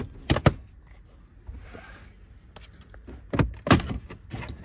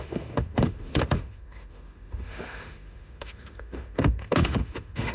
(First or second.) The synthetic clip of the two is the second